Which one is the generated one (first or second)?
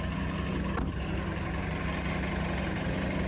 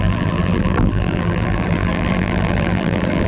second